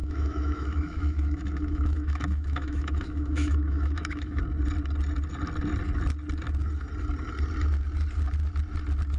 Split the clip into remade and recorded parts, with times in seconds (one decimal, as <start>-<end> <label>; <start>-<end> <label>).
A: 0.0-4.4 remade; 4.4-9.2 recorded